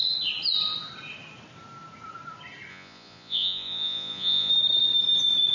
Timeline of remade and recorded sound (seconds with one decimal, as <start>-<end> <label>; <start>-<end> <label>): 0.0-2.7 recorded; 2.7-4.5 remade; 4.5-5.5 recorded